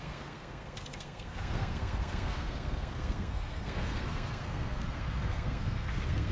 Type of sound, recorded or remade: remade